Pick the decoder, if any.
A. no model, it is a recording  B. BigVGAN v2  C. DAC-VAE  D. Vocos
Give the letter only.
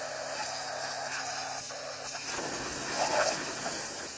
A